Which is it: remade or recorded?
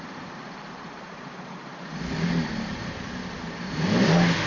remade